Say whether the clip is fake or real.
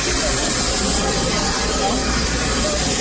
real